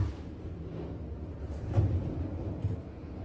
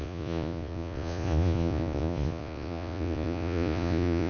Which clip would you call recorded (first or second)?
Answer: first